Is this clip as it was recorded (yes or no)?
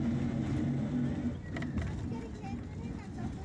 yes